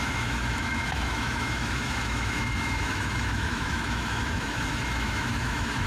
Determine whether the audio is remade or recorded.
remade